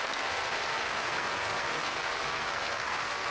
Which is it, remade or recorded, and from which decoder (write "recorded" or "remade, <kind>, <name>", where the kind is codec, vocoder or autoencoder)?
remade, codec, SNAC